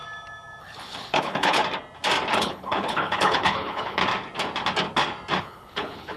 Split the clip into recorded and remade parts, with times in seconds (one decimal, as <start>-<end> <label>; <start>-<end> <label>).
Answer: 0.0-0.6 recorded; 0.6-1.6 remade; 1.6-2.3 recorded; 2.3-4.0 remade; 4.0-5.4 recorded; 5.4-6.2 remade